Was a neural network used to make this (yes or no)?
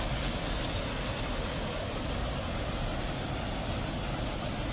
no